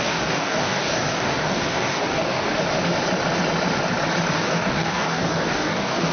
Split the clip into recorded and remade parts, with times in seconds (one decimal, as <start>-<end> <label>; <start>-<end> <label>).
0.0-2.5 remade; 2.5-4.3 recorded; 4.3-6.1 remade